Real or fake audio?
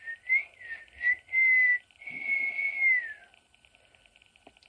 real